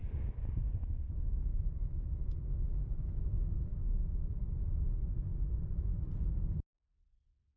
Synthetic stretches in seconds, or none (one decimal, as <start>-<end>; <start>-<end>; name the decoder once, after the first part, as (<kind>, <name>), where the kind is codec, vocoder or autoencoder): 1.5-2.2 (autoencoder, DAC-VAE)